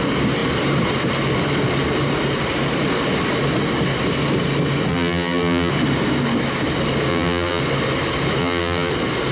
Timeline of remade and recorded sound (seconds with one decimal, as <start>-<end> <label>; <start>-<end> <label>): 0.0-4.9 recorded; 4.9-5.7 remade; 5.7-7.1 recorded; 7.1-7.6 remade; 7.6-8.4 recorded; 8.4-8.9 remade; 8.9-9.3 recorded